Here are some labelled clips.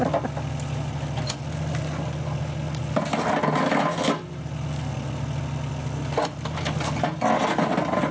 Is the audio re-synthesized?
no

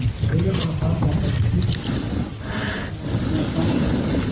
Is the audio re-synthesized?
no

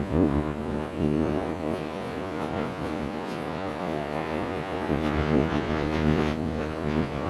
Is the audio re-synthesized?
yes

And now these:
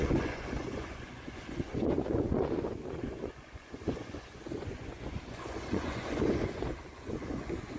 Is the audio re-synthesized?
yes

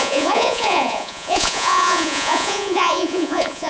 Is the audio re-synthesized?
yes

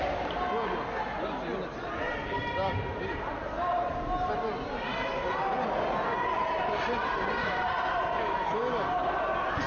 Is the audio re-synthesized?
no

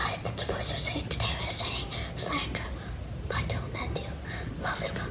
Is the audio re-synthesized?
no